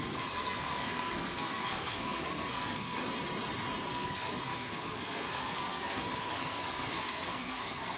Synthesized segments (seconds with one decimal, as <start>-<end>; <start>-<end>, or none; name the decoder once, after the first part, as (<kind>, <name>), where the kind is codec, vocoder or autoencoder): 0.0-3.0 (codec, SNAC); 3.9-8.0